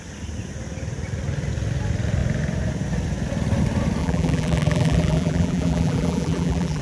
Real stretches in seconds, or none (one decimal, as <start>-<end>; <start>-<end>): 0.0-4.0